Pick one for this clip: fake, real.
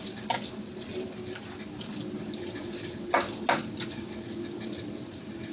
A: real